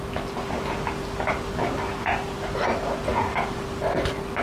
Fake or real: real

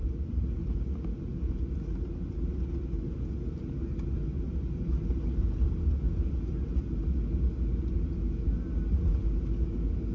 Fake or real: real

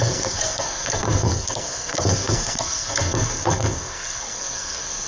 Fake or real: fake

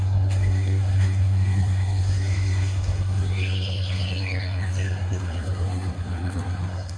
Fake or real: fake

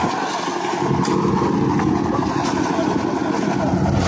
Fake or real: real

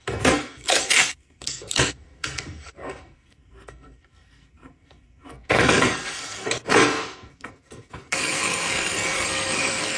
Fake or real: fake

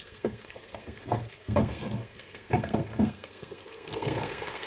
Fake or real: fake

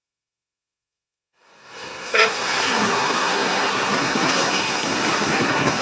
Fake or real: fake